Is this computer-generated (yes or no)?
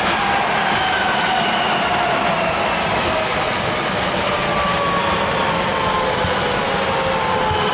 no